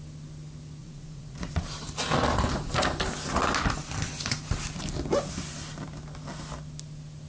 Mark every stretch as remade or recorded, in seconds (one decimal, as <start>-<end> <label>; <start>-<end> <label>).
0.0-0.8 recorded; 0.8-1.5 remade; 1.5-7.3 recorded

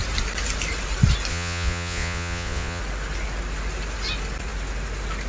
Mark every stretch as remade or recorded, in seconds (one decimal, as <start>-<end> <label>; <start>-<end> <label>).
0.0-1.3 recorded; 1.3-2.8 remade; 2.8-5.3 recorded

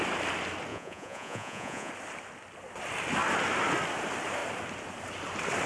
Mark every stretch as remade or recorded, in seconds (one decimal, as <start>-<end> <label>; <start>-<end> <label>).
0.0-0.7 recorded; 0.7-1.9 remade; 1.9-5.7 recorded

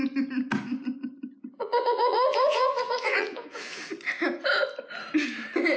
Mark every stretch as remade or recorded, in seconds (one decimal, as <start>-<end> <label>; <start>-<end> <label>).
0.0-1.6 recorded; 1.6-3.8 remade; 3.8-5.8 recorded

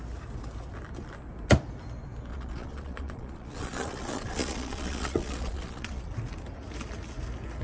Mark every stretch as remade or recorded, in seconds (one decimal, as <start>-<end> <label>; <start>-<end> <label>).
0.0-2.3 recorded; 2.3-6.0 remade; 6.0-7.6 recorded